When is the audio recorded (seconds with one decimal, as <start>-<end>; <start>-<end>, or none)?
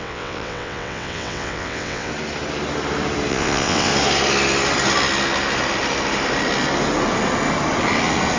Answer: 2.1-3.3; 3.9-8.4